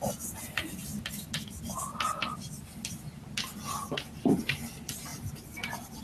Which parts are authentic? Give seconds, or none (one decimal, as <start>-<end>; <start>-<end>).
0.0-6.0

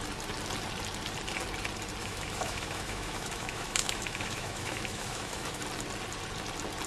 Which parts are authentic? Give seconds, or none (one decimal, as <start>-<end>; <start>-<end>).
0.0-2.0; 5.6-6.9

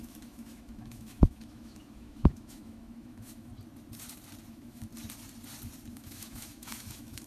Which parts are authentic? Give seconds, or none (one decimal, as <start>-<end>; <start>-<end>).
3.5-4.5; 4.9-5.9

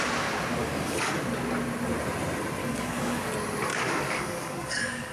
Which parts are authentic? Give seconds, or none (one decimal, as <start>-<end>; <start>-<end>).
0.0-0.6; 1.2-2.6; 3.3-3.7